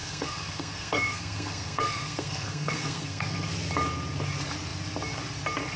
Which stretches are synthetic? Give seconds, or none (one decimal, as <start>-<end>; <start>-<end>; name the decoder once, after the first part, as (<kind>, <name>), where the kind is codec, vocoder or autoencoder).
0.0-3.5 (codec, SNAC)